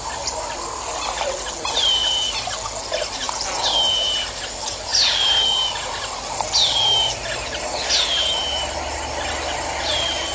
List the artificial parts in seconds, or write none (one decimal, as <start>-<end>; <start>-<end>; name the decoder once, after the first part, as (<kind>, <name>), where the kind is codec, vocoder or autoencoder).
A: none